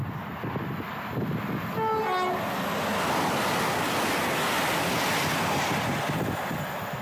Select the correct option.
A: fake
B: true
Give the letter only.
B